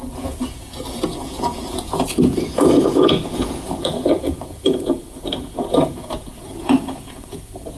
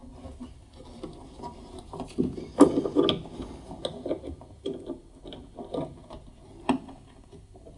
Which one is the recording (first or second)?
second